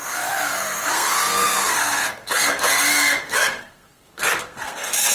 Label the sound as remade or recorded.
remade